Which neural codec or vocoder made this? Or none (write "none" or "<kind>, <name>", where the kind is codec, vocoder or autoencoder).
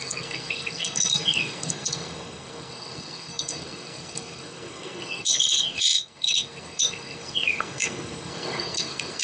codec, SNAC